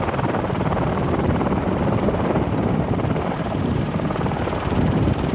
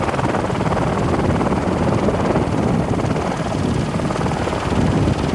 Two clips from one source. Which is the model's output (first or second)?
first